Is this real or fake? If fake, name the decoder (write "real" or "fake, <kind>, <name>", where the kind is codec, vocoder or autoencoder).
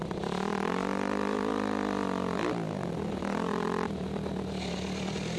real